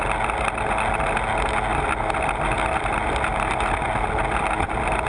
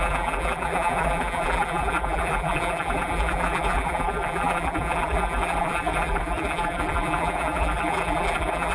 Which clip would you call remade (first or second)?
second